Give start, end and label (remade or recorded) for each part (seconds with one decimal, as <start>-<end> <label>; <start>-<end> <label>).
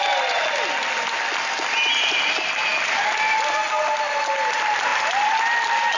0.0-4.9 recorded; 4.9-6.0 remade